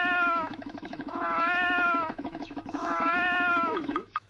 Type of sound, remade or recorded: remade